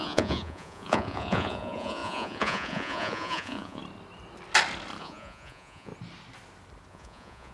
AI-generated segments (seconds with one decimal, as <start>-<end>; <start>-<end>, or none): 0.0-3.8; 5.0-5.9; 6.9-7.5